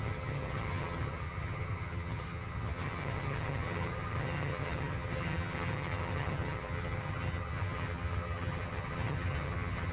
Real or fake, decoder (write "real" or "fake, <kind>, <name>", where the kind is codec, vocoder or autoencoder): fake, vocoder, HiFi-GAN